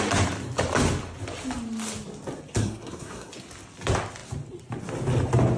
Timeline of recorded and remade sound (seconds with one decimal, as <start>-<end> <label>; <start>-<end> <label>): 0.0-2.6 recorded; 2.6-3.3 remade; 3.3-5.6 recorded